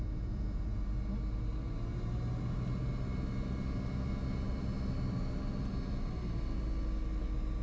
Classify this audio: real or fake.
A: real